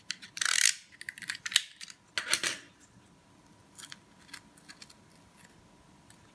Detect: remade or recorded recorded